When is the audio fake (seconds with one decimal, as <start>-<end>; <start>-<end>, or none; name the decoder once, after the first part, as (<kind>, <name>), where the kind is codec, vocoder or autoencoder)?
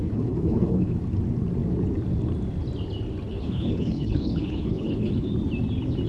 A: 0.0-1.0 (codec, HILCodec); 3.3-5.3